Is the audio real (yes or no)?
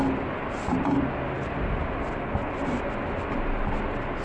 yes